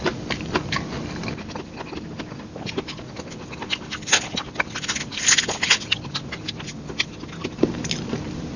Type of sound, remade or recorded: recorded